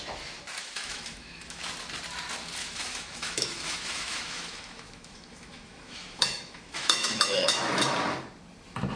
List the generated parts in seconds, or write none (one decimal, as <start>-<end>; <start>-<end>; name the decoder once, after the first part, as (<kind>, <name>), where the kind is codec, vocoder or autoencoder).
0.6-1.6 (autoencoder, DAC-VAE); 2.6-7.8